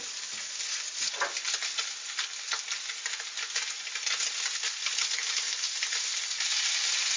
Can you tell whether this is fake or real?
real